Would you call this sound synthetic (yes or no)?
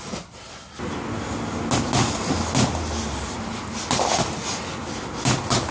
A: no